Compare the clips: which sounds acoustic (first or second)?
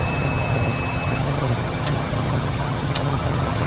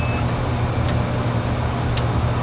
second